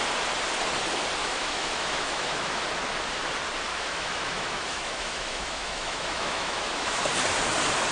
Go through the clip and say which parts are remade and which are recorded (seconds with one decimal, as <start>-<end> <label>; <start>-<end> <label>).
0.0-1.2 recorded; 1.2-2.6 remade; 2.6-3.7 recorded; 3.7-7.0 remade; 7.0-7.9 recorded